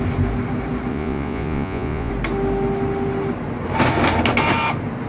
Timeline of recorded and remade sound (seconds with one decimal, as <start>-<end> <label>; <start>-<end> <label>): 0.0-0.9 recorded; 0.9-2.1 remade; 2.1-5.1 recorded